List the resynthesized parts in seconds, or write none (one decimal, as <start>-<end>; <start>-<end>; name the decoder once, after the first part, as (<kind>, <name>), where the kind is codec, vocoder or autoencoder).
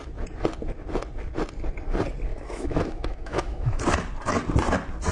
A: 2.3-3.8 (autoencoder, DAC-VAE)